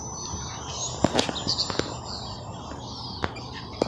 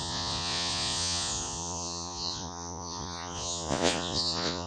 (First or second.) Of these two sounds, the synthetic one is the second